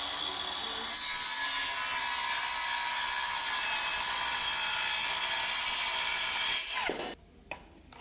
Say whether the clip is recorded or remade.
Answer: recorded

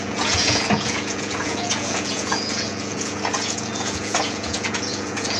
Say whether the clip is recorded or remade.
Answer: remade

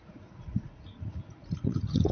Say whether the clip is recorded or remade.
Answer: remade